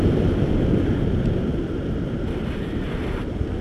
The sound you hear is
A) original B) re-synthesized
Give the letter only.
B